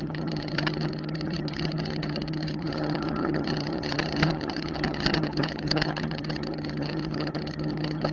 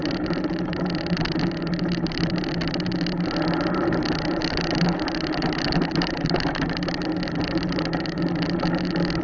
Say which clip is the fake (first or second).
first